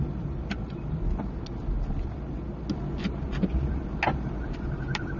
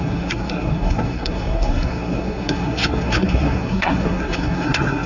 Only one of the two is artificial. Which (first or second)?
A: second